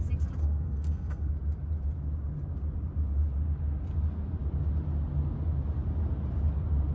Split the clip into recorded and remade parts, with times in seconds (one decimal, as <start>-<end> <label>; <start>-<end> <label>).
0.0-0.4 recorded; 0.4-1.3 remade; 1.3-6.9 recorded